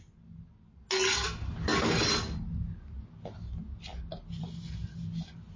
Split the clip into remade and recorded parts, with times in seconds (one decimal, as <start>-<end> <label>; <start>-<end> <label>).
0.0-5.6 recorded